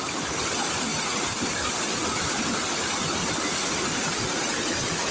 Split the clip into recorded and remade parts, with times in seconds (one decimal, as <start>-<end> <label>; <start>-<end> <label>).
0.0-5.1 recorded